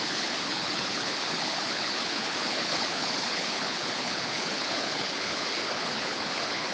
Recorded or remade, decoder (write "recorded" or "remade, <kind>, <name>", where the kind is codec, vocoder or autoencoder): remade, codec, HILCodec